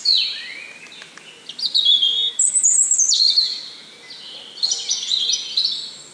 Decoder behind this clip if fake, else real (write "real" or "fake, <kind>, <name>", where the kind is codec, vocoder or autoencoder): real